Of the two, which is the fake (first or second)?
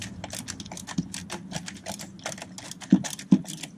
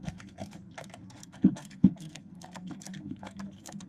second